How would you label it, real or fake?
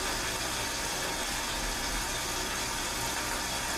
real